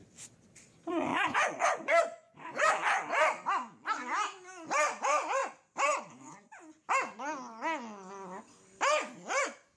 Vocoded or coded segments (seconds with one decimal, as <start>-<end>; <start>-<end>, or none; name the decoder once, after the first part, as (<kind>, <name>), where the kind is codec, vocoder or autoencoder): 1.1-2.7 (vocoder, Vocos)